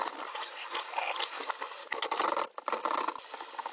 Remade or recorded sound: recorded